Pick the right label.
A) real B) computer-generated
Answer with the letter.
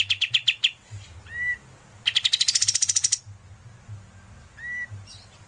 A